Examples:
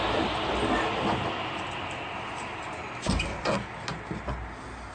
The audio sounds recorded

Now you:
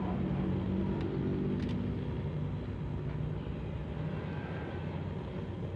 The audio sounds recorded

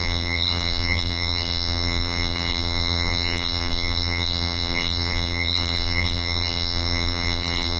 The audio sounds remade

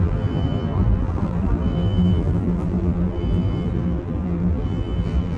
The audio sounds remade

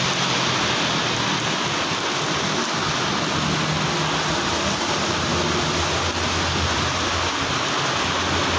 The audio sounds recorded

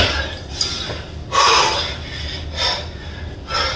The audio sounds recorded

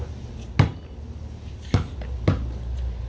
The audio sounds recorded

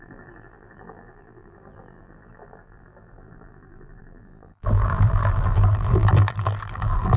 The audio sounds remade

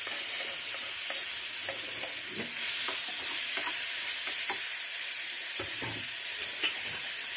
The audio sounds remade